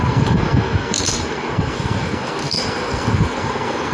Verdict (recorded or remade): remade